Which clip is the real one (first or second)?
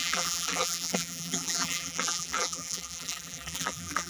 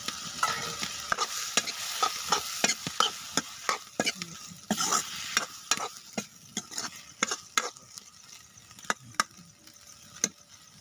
second